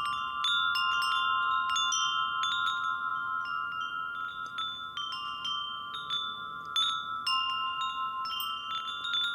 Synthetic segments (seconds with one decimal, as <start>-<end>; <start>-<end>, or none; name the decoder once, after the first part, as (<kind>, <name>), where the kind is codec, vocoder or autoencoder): none